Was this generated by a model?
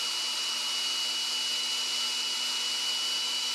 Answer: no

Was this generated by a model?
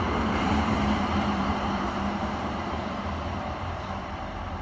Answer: yes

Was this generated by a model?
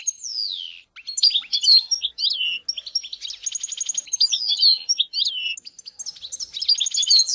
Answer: no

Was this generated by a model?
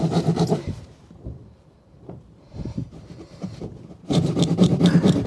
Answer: yes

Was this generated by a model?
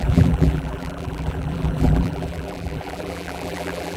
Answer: yes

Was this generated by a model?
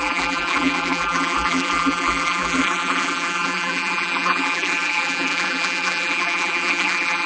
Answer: yes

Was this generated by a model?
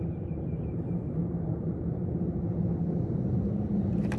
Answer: no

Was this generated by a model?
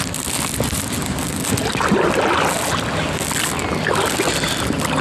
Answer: no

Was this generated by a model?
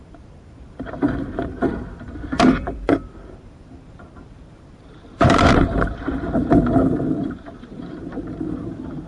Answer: yes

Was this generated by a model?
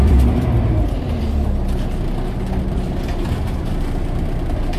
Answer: yes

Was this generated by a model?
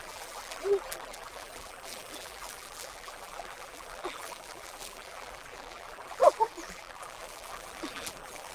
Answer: yes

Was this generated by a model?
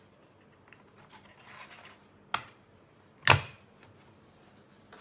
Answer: no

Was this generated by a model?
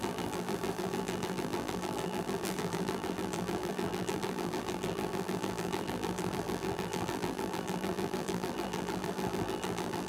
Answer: yes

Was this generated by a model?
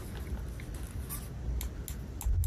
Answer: no